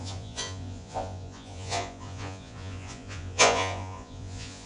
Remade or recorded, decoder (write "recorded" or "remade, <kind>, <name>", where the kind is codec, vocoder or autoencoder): remade, vocoder, Vocos